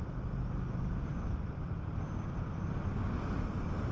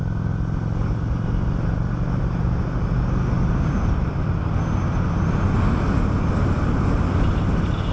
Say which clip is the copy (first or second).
first